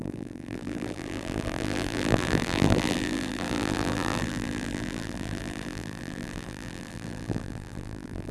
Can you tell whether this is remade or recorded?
remade